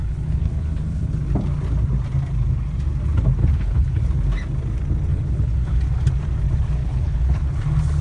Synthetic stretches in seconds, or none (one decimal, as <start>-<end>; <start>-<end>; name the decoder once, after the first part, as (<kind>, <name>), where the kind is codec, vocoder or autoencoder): 0.0-1.1 (codec, HILCodec); 3.4-4.0; 5.1-5.8; 6.8-7.5